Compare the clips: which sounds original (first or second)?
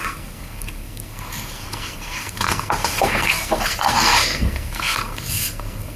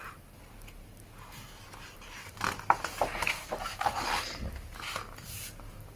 second